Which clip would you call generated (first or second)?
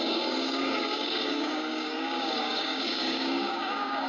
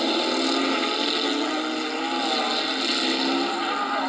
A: first